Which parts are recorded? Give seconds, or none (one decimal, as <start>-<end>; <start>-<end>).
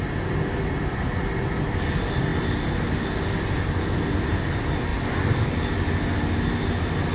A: 0.0-7.1